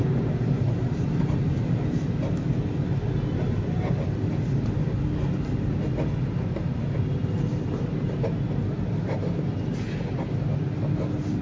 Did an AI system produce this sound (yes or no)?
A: no